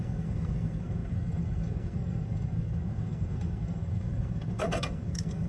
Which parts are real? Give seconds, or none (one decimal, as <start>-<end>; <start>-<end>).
none